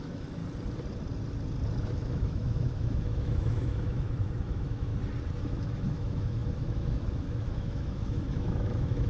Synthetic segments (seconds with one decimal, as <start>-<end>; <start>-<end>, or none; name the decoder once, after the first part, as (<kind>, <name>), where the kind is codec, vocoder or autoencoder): 0.0-0.4 (autoencoder, DAC-VAE); 1.8-4.9; 5.4-9.1